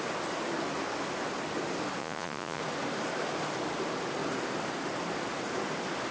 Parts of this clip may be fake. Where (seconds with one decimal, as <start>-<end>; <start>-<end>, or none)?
2.0-2.6